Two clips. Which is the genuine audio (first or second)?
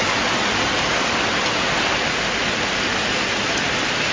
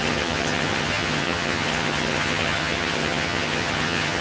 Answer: first